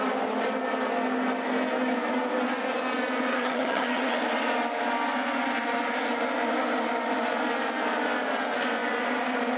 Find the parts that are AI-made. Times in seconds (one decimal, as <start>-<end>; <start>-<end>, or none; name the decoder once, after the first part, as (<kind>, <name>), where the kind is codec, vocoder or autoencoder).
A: 3.3-4.2 (vocoder, HiFi-GAN)